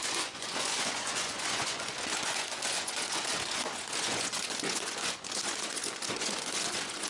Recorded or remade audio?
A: remade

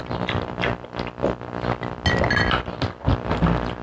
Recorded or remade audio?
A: recorded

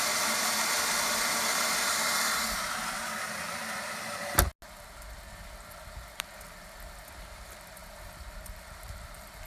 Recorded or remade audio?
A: recorded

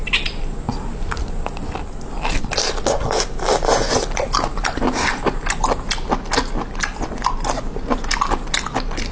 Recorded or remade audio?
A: recorded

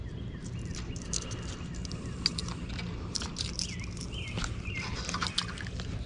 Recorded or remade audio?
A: recorded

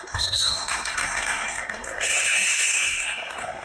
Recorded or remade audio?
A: remade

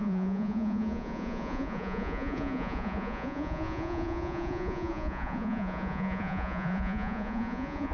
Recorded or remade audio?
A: remade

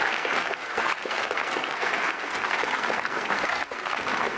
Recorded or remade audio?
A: remade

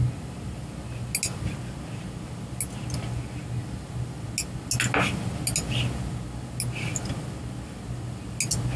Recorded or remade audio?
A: recorded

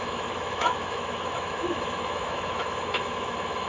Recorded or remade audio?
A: remade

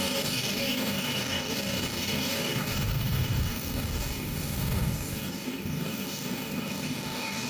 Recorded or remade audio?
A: remade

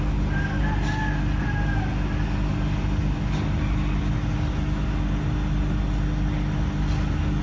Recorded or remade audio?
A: recorded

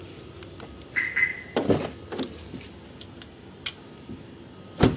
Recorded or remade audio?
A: recorded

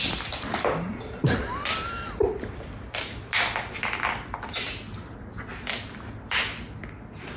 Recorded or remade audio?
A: recorded